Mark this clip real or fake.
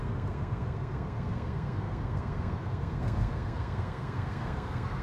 fake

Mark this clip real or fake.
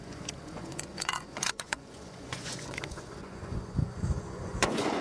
fake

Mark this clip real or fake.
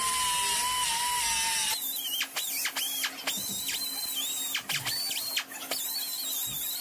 real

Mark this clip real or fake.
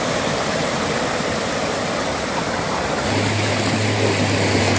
real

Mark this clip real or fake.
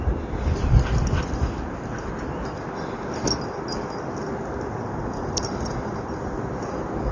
real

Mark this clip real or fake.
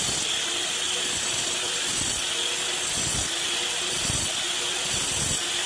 real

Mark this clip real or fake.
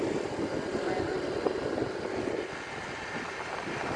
real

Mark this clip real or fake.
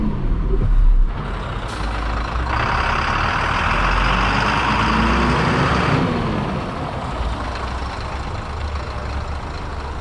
real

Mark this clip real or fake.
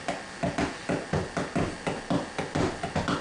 real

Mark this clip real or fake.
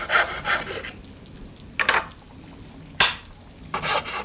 real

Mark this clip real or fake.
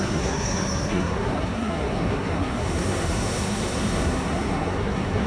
fake